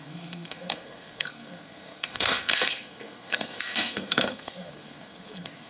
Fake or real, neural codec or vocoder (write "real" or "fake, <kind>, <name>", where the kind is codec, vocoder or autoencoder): fake, codec, SNAC